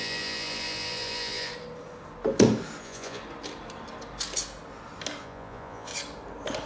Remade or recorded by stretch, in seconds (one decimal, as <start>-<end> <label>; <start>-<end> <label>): 0.0-1.5 remade; 1.5-2.8 recorded; 2.8-3.2 remade; 3.2-5.2 recorded; 5.2-5.9 remade; 5.9-6.7 recorded